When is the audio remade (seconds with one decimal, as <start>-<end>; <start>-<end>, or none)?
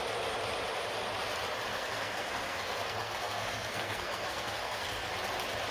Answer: 1.7-5.1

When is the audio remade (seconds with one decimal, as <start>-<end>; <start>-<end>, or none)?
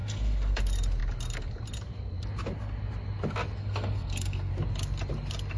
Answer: 0.0-0.6; 3.6-4.5